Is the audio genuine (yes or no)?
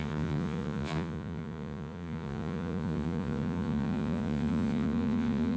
no